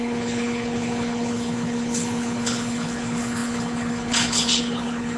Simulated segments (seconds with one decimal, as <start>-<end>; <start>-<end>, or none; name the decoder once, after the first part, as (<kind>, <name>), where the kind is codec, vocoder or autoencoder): 0.0-5.2 (codec, HILCodec)